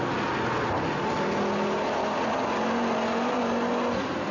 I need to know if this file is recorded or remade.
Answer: recorded